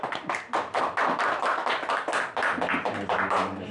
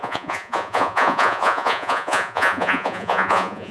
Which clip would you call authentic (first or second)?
first